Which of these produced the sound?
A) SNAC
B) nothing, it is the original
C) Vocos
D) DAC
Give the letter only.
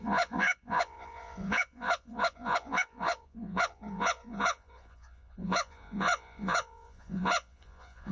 C